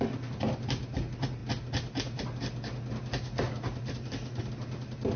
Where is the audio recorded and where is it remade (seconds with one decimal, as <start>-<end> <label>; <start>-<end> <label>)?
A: 0.0-5.2 recorded